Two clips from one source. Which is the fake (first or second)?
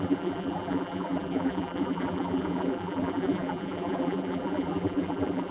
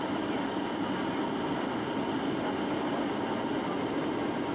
first